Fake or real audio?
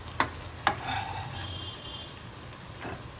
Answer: real